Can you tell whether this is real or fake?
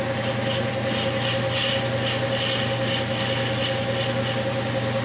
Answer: real